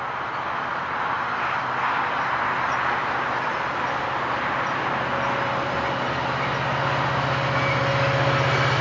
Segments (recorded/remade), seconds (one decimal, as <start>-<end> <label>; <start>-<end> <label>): 0.0-8.8 recorded